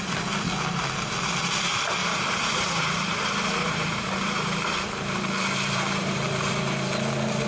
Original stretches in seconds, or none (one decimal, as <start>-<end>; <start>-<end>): 0.0-2.0; 6.5-7.5